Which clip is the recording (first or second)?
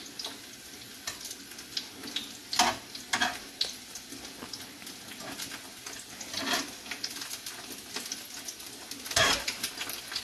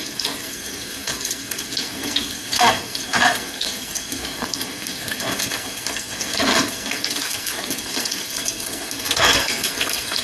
first